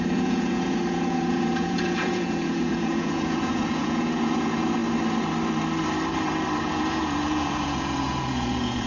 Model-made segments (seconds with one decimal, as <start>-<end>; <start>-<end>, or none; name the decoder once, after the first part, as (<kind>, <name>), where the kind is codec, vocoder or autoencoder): 0.0-4.8 (vocoder, Vocos); 6.6-8.9